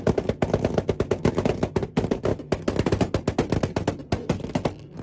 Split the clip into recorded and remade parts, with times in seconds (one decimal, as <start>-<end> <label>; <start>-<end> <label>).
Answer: 0.0-5.0 recorded